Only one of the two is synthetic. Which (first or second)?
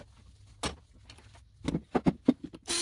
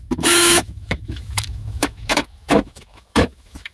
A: second